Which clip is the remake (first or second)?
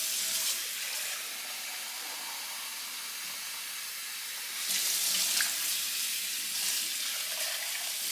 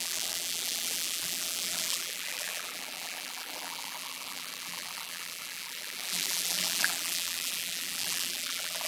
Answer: second